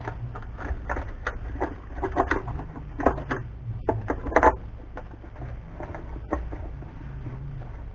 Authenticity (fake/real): real